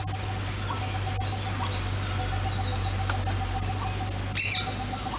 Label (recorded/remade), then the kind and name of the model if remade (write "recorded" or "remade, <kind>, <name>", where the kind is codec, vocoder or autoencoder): recorded